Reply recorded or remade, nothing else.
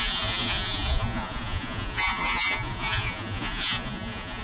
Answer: remade